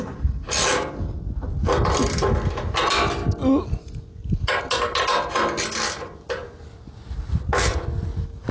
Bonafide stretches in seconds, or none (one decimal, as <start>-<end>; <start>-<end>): 0.0-8.5